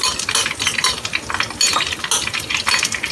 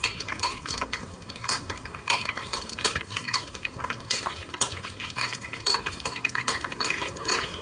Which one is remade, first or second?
second